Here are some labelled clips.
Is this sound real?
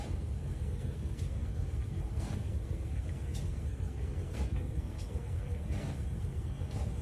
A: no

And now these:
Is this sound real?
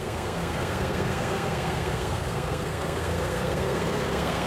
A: no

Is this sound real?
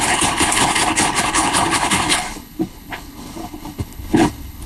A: no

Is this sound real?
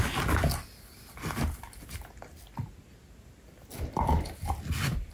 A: yes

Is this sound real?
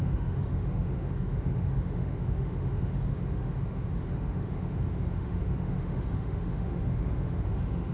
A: no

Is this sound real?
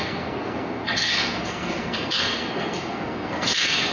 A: no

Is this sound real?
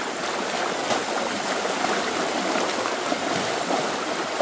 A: yes